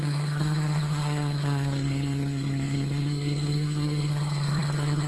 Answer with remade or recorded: remade